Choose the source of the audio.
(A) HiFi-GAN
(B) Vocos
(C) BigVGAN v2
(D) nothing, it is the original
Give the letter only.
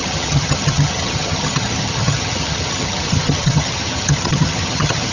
A